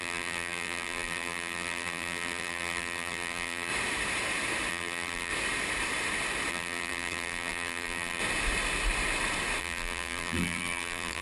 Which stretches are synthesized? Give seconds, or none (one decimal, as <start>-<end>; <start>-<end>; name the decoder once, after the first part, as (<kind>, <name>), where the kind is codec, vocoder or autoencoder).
0.0-3.7 (vocoder, BigVGAN v2); 4.7-5.3; 6.5-8.2; 9.6-11.2